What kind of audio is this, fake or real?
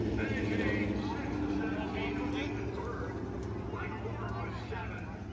real